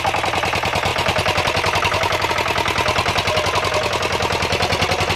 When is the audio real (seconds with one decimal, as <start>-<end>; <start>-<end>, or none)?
0.0-0.9; 2.3-5.2